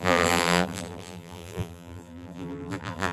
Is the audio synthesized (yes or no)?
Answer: yes